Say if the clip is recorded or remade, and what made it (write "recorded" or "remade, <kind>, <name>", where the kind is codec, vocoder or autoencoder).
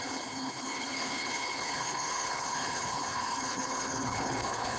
remade, codec, HILCodec